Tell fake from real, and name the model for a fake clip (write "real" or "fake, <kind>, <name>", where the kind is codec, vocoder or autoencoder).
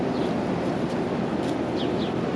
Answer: real